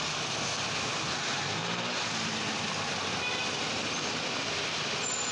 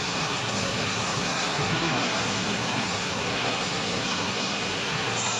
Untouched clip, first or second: first